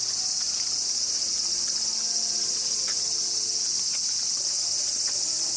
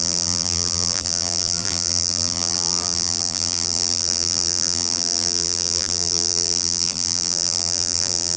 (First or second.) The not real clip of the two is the second